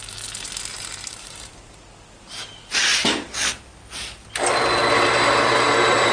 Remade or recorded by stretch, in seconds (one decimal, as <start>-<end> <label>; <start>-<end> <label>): 0.0-0.7 recorded; 0.7-1.8 remade; 1.8-2.9 recorded; 2.9-3.6 remade; 3.6-6.1 recorded